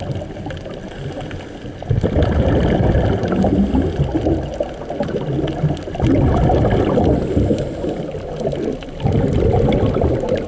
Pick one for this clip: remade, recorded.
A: recorded